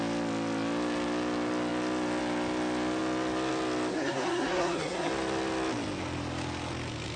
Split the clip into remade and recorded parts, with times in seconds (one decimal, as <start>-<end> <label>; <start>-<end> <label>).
0.0-3.9 recorded; 3.9-5.1 remade; 5.1-7.2 recorded